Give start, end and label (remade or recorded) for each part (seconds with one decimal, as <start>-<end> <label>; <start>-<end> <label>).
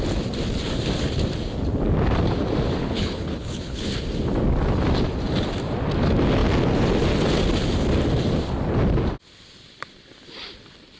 0.0-2.8 recorded; 2.8-3.9 remade; 3.9-11.0 recorded